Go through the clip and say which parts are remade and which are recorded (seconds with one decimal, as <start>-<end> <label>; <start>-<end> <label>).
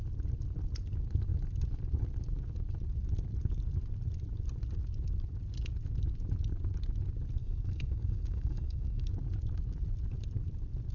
0.0-7.4 recorded; 7.4-9.1 remade; 9.1-10.9 recorded